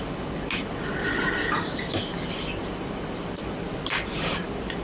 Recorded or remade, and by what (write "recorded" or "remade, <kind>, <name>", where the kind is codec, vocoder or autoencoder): recorded